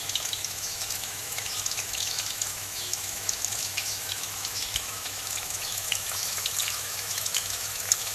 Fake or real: fake